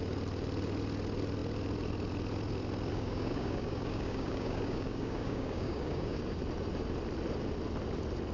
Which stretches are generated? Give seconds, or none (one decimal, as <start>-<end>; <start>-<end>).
2.9-6.2